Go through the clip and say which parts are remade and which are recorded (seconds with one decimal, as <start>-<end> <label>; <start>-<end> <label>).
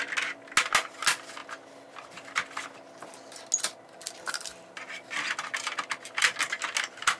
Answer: 0.0-7.2 recorded